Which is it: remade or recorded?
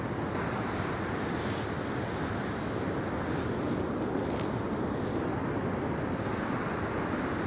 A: recorded